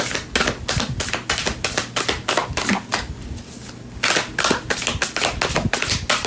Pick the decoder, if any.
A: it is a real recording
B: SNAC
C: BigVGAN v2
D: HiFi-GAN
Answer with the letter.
A